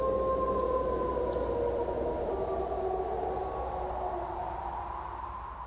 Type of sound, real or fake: real